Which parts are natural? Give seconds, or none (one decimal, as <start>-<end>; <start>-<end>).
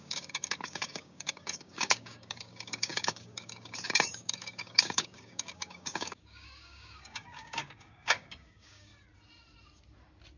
8.9-10.4